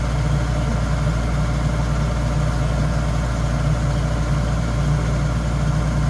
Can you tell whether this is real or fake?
real